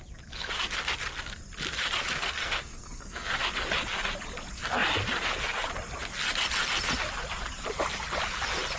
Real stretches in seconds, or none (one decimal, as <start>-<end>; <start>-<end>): 0.0-2.2; 3.3-8.8